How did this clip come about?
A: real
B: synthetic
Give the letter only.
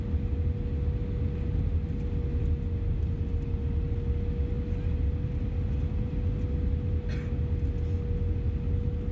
A